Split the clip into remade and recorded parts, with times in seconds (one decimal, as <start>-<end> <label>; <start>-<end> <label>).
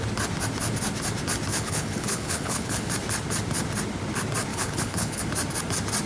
0.0-1.5 recorded; 1.5-2.9 remade; 2.9-4.5 recorded; 4.5-5.2 remade; 5.2-6.1 recorded